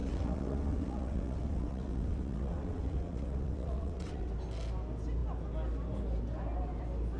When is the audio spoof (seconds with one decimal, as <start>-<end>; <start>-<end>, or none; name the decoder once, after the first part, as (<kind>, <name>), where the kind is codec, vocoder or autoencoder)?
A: 0.0-4.3 (vocoder, WaveNeXt)